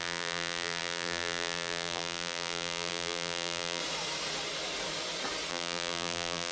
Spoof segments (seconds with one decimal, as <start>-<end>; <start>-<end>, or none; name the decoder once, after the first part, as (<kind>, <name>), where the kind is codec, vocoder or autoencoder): 0.0-3.8 (vocoder, BigVGAN v2); 5.5-6.5